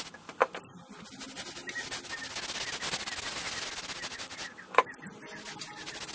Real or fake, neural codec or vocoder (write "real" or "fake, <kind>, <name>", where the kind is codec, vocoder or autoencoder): real